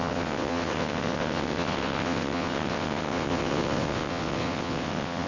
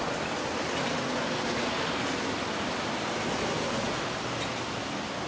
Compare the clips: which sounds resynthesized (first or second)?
first